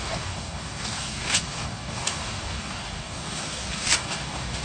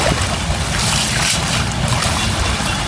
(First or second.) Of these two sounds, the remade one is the first